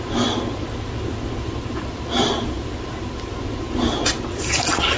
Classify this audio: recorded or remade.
recorded